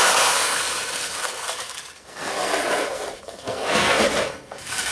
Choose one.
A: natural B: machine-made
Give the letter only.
B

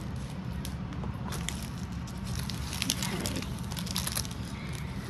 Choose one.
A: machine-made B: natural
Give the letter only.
B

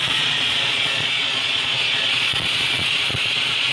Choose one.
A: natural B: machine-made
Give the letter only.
B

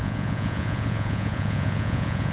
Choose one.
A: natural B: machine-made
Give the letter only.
B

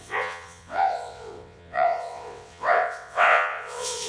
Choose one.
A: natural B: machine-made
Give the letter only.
B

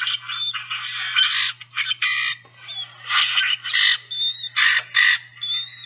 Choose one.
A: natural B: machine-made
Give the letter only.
A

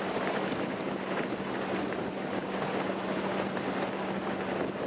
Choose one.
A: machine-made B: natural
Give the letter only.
B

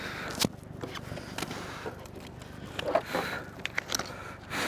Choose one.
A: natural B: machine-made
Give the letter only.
A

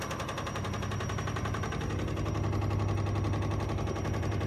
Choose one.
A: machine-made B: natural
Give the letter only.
B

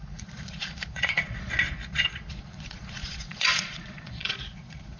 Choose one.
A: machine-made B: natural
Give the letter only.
A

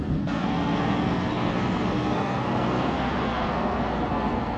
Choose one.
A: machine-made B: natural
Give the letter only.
A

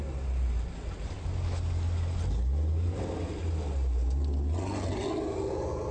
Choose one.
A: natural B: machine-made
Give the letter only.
A